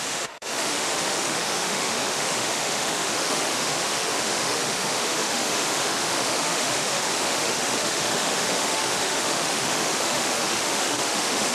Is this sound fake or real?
fake